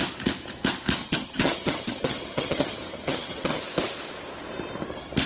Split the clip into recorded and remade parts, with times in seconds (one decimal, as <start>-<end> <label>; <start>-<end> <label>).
0.0-1.0 recorded; 1.0-3.6 remade; 3.6-5.3 recorded